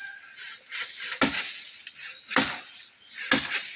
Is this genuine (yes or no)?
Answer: yes